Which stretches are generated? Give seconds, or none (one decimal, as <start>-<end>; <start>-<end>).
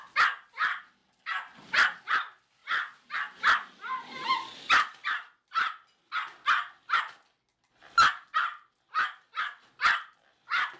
none